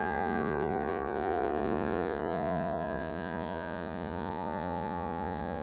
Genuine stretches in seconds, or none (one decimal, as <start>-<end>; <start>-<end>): none